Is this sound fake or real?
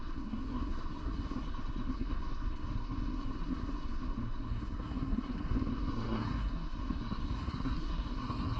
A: fake